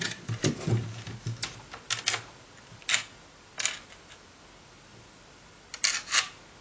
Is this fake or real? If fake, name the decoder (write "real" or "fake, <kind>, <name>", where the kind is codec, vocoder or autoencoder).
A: real